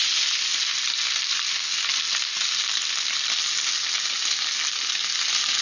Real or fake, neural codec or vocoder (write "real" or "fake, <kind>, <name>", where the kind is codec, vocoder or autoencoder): real